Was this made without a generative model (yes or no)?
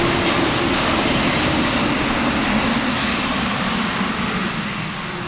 yes